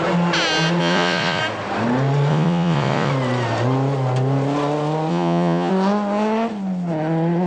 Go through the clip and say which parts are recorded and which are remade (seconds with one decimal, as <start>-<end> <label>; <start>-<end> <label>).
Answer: 0.0-0.8 recorded; 0.8-1.4 remade; 1.4-2.3 recorded; 2.3-3.1 remade; 3.1-5.1 recorded; 5.1-5.7 remade; 5.7-7.5 recorded